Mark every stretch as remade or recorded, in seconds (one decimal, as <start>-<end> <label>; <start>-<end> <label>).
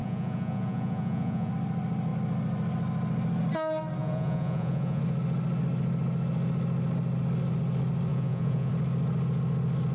0.0-1.5 remade; 1.5-4.0 recorded; 4.0-5.0 remade; 5.0-8.1 recorded; 8.1-8.7 remade; 8.7-9.9 recorded